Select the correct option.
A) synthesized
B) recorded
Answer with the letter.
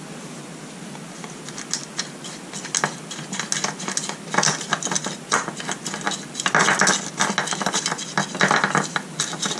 B